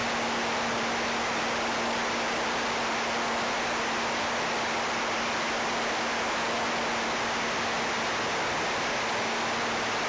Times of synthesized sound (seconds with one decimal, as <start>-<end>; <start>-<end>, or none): none